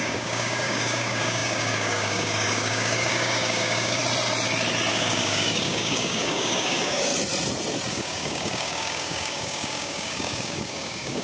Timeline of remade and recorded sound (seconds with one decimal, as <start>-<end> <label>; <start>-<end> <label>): 0.0-4.0 remade; 4.0-4.9 recorded; 4.9-7.1 remade; 7.1-7.9 recorded; 7.9-11.2 remade

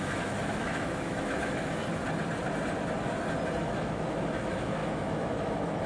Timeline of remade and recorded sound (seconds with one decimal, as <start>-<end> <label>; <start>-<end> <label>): 0.0-1.8 remade; 1.8-3.6 recorded; 3.6-5.9 remade

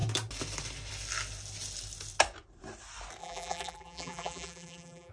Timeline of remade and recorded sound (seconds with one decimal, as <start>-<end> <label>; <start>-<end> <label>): 0.0-3.2 recorded; 3.2-5.1 remade

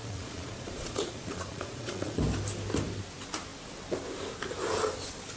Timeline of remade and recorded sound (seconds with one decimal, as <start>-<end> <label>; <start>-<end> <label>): 0.0-2.2 remade; 2.2-5.4 recorded